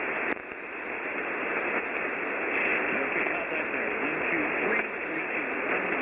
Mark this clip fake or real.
real